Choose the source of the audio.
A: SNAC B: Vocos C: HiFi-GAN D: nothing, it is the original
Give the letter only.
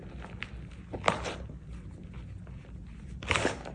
D